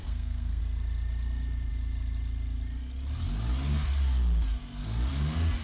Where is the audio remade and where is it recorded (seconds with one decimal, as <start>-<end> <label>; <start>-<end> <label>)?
0.0-0.6 remade; 0.6-5.6 recorded